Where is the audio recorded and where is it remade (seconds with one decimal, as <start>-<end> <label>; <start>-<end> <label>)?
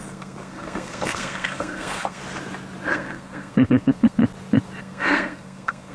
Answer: 0.0-2.2 remade; 2.2-2.9 recorded; 2.9-4.2 remade; 4.2-4.8 recorded; 4.8-5.9 remade